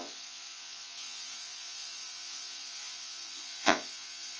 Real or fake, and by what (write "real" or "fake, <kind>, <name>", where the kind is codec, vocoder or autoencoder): fake, vocoder, Vocos